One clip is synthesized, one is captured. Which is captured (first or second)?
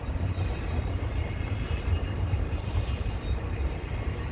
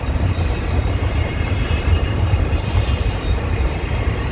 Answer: first